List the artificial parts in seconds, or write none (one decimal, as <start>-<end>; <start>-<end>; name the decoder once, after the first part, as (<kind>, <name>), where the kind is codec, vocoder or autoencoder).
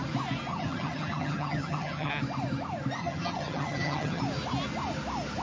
0.5-2.1 (vocoder, HiFi-GAN); 3.0-4.2